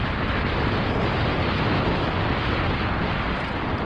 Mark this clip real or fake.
real